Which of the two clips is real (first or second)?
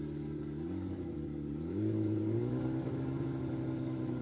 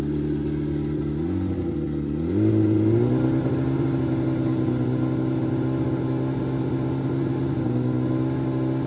second